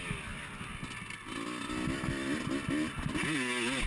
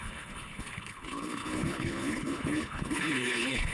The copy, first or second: second